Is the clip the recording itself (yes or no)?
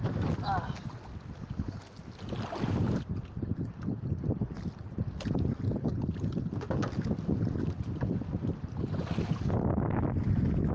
yes